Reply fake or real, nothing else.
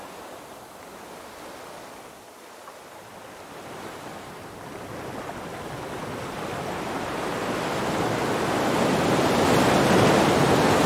real